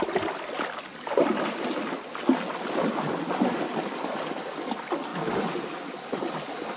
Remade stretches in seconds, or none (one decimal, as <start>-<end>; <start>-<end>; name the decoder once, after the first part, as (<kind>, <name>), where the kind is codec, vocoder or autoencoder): none